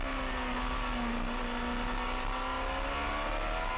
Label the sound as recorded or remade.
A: recorded